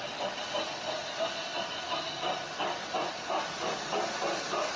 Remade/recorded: recorded